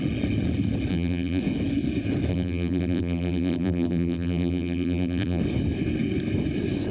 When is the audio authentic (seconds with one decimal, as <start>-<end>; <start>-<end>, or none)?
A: 0.0-0.9; 1.4-2.3; 5.4-6.9